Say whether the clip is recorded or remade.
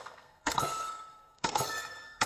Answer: remade